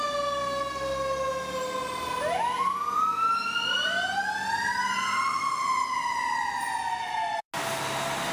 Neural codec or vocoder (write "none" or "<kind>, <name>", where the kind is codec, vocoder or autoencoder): none